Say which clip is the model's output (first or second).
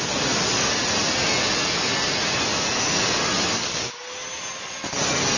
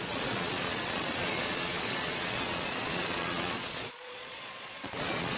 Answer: second